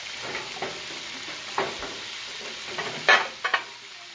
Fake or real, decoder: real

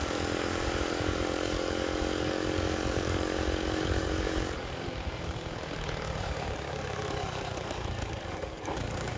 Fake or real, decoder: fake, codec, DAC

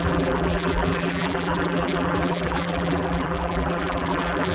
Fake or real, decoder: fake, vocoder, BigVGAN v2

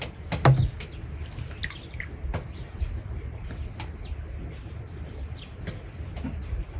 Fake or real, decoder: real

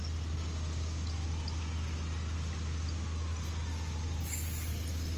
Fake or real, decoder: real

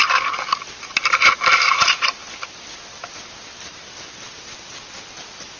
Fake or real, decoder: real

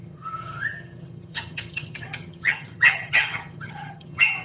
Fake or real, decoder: fake, vocoder, HiFi-GAN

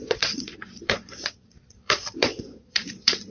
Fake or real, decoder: fake, vocoder, Vocos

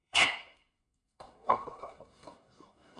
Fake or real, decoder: fake, codec, SNAC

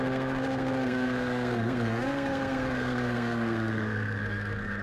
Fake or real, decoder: fake, codec, SNAC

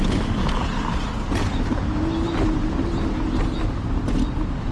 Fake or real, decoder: real